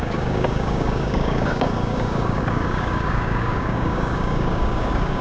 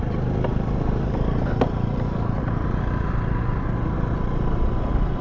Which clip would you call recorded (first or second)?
second